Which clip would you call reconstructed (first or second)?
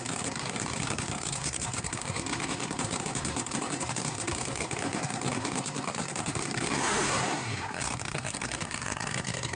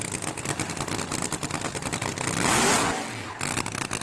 first